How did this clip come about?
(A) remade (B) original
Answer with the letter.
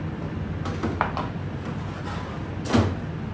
B